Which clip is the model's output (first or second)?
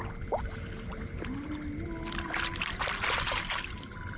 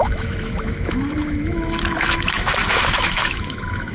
second